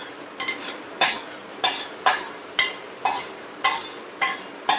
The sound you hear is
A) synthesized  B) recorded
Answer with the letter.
B